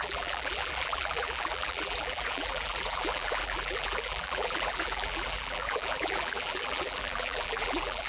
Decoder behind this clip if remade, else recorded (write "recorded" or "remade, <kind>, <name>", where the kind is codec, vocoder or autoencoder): remade, vocoder, BigVGAN v2